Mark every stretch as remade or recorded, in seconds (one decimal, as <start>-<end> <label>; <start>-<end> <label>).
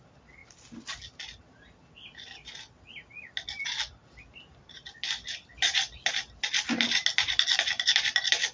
0.0-8.5 recorded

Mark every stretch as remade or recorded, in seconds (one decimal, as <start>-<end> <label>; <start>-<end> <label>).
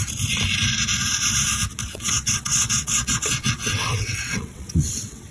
0.0-1.8 recorded; 1.8-5.3 remade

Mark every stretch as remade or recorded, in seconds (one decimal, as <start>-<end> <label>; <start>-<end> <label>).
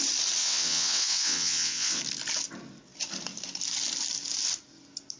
0.0-0.4 recorded; 0.4-2.0 remade; 2.0-5.2 recorded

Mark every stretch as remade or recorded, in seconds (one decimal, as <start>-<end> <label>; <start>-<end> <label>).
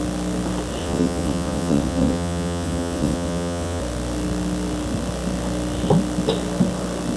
0.0-0.8 recorded; 0.8-3.8 remade; 3.8-7.2 recorded